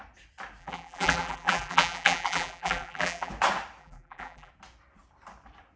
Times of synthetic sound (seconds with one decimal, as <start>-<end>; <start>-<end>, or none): 0.6-3.3; 3.8-4.5